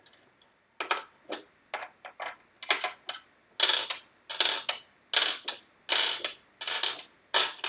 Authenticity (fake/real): real